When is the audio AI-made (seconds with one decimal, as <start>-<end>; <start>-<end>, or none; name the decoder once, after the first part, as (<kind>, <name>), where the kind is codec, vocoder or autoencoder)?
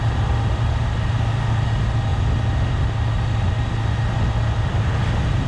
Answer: none